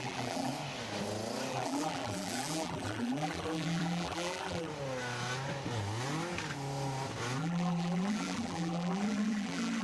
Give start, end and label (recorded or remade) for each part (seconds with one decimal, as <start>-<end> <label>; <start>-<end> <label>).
0.0-0.5 remade; 0.5-1.5 recorded; 1.5-4.7 remade; 4.7-7.4 recorded; 7.4-9.8 remade